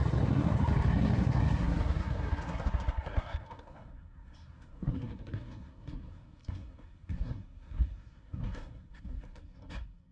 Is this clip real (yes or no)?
no